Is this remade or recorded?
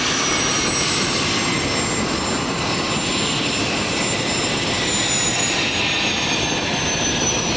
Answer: recorded